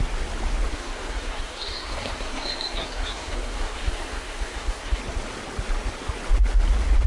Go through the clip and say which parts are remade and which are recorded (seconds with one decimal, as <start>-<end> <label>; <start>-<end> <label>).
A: 0.0-0.7 recorded; 0.7-5.0 remade; 5.0-7.1 recorded